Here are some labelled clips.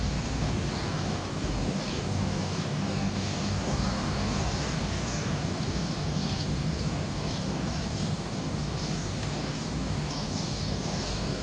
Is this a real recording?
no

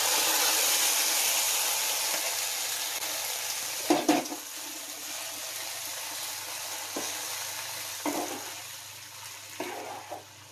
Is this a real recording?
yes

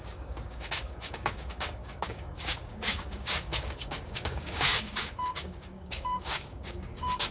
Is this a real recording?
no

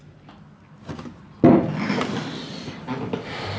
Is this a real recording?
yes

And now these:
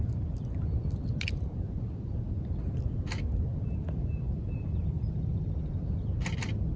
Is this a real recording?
yes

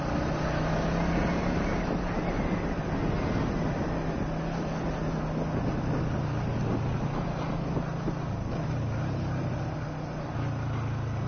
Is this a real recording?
yes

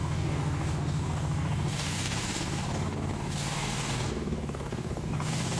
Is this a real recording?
no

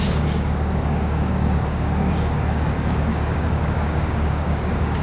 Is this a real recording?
no